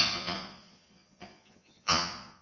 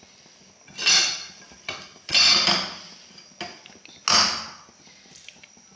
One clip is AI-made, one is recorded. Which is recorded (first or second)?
second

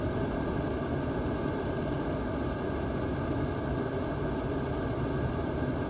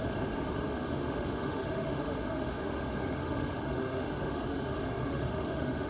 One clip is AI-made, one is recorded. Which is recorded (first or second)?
first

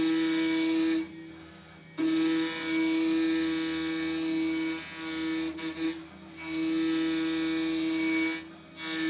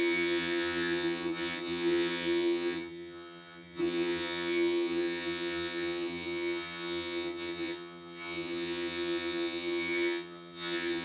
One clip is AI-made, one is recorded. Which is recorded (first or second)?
first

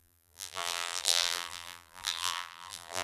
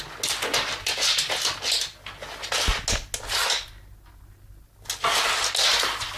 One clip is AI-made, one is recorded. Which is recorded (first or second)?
second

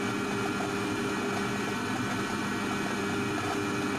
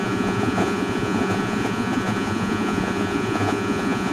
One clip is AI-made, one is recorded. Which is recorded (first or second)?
first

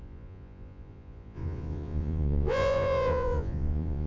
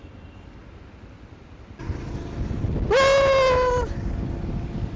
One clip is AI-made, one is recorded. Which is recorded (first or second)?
second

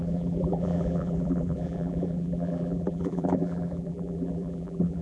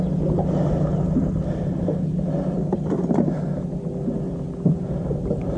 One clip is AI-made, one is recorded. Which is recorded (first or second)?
second